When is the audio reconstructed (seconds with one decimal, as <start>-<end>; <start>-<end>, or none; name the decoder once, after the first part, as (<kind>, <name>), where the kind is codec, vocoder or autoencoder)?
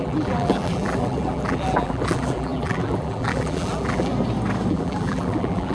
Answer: 0.0-4.1 (vocoder, BigVGAN v2); 4.7-5.7